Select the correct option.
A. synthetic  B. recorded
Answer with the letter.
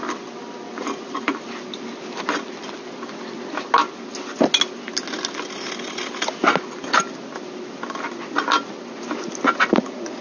B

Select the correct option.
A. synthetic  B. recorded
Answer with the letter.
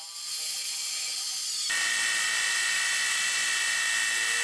B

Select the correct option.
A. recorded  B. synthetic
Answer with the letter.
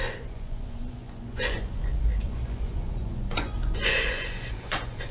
B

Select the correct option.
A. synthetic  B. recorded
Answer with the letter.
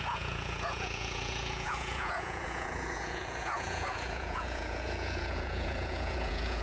A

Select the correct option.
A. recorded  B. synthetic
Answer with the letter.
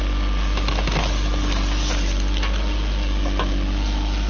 A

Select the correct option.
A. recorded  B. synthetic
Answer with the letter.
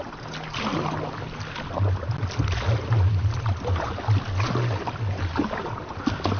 A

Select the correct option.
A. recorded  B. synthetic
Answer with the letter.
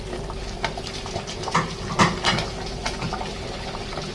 A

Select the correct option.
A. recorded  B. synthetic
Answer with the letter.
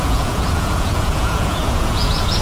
B